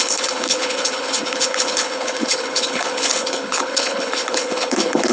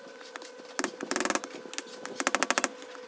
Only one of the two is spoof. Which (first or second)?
first